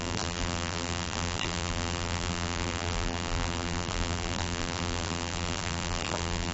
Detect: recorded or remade remade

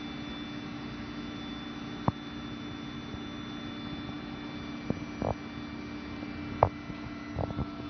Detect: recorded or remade recorded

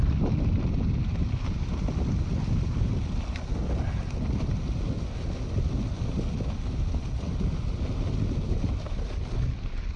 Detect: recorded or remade recorded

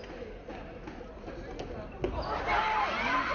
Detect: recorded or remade recorded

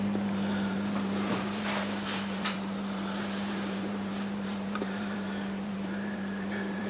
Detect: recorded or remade remade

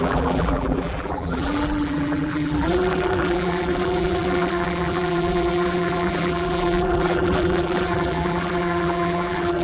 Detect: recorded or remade remade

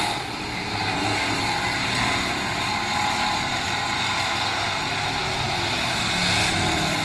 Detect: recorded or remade recorded